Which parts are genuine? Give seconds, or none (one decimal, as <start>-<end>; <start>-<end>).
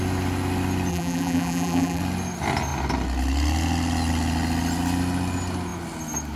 0.0-0.9; 2.0-6.4